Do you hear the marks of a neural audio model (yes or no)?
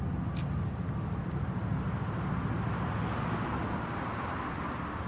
no